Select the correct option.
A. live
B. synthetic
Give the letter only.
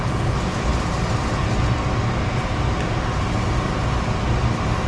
A